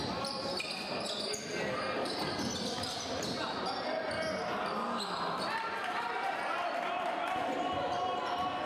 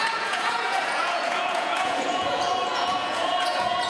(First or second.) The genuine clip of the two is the first